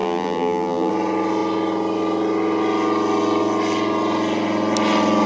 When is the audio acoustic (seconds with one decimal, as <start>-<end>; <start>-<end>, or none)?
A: 0.9-5.3